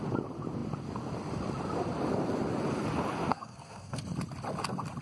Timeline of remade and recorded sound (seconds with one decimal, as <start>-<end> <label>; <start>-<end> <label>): 0.0-3.3 recorded; 3.3-4.0 remade; 4.0-5.0 recorded